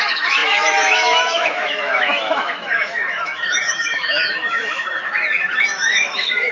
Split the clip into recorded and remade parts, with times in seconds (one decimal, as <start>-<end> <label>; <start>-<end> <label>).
0.0-6.5 remade